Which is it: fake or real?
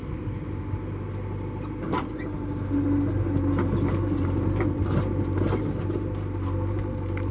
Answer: real